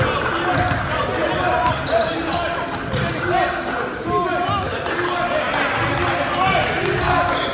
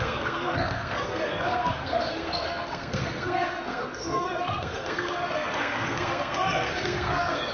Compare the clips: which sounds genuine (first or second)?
first